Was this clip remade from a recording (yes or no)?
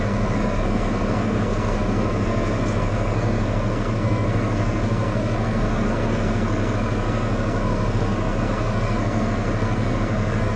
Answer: yes